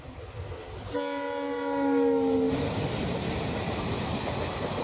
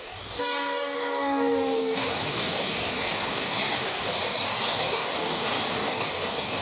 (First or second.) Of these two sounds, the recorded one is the first